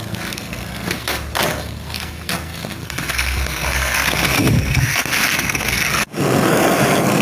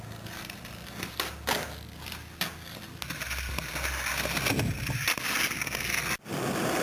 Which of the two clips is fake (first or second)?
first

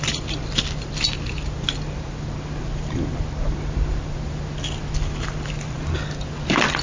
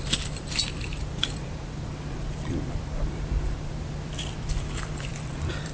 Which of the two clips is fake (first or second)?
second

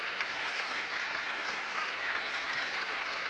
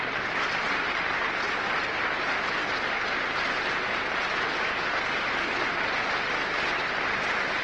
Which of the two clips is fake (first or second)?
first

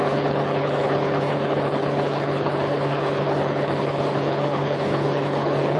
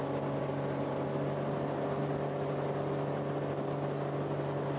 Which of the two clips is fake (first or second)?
first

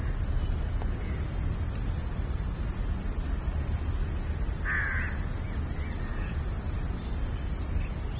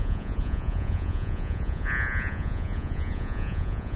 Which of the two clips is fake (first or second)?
second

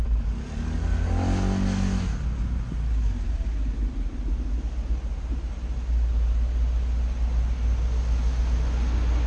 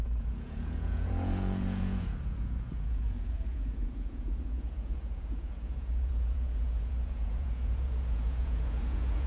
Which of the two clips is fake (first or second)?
second